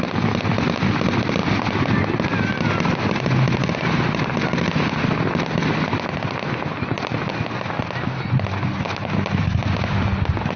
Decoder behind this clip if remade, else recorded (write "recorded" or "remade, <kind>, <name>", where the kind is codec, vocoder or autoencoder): recorded